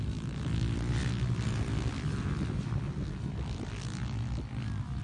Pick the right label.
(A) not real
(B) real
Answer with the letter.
B